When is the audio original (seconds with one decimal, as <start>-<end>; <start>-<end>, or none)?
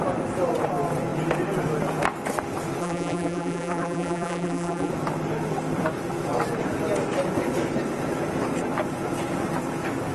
0.0-2.8; 4.9-10.1